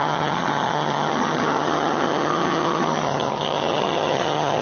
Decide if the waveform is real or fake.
fake